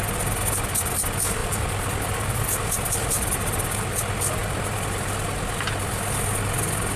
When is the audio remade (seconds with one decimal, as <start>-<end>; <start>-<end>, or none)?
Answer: 1.4-3.8